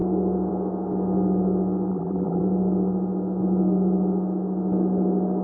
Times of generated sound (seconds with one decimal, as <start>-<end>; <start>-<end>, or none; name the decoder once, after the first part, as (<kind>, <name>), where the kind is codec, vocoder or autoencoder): 1.9-2.4 (vocoder, BigVGAN v2)